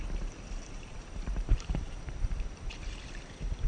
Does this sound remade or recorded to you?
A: remade